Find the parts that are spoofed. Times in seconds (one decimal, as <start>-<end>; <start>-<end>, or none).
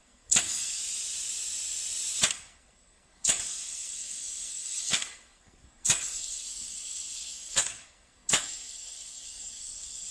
0.0-0.8; 2.3-10.1